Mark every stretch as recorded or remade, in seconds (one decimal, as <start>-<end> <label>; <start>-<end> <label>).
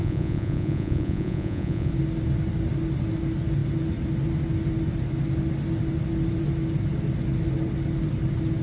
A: 0.0-1.9 remade; 1.9-8.6 recorded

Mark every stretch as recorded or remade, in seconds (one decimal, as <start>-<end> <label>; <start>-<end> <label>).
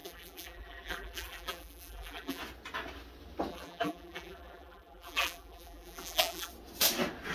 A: 0.0-2.4 remade; 2.4-3.5 recorded; 3.5-6.5 remade; 6.5-7.3 recorded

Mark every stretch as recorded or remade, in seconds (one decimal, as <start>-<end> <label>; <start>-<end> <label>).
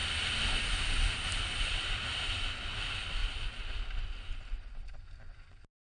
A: 0.0-5.8 recorded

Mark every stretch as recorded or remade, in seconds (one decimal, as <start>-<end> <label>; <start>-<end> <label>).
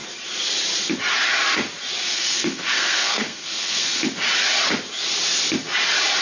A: 0.0-2.1 recorded; 2.1-4.0 remade; 4.0-6.2 recorded